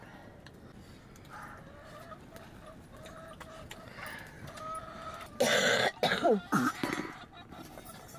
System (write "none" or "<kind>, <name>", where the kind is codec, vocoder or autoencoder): none